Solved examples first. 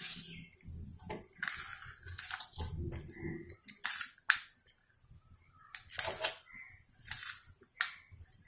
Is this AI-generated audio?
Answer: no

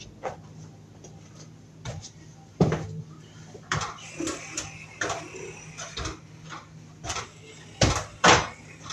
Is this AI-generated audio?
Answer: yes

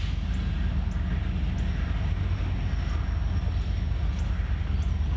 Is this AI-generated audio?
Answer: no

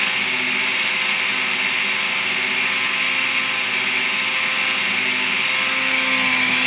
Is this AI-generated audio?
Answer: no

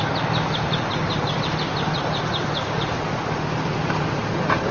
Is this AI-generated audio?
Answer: no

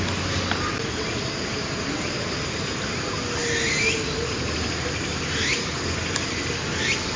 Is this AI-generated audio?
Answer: no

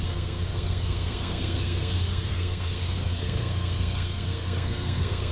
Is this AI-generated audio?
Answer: yes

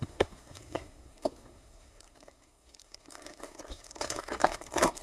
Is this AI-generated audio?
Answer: yes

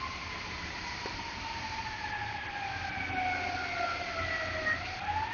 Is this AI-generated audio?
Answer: no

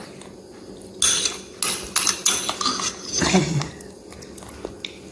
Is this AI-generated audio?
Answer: no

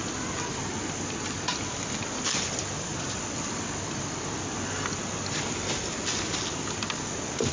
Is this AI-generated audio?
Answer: no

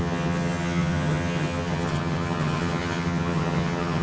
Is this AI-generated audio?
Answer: yes